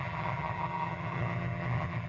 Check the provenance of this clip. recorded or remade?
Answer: remade